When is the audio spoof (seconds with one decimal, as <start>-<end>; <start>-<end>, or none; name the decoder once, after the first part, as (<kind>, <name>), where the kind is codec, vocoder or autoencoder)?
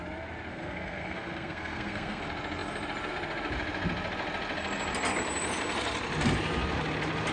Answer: 0.5-2.2 (codec, SNAC)